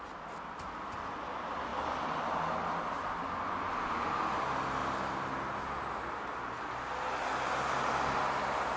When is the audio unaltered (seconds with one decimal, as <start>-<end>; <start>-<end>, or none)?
0.0-8.8